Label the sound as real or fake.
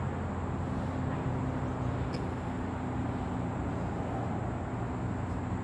real